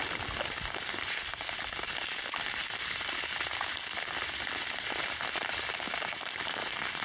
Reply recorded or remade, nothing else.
recorded